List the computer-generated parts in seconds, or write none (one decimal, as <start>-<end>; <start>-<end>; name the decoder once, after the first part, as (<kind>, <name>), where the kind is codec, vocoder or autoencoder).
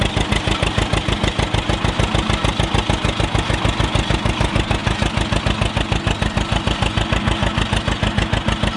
none